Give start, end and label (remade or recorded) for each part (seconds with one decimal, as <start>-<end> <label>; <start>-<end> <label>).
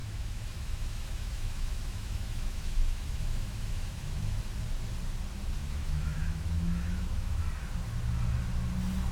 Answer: 0.0-4.4 remade; 4.4-5.6 recorded; 5.6-7.4 remade; 7.4-9.1 recorded